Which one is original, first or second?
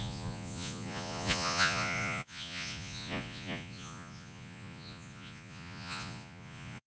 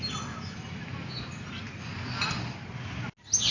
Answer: second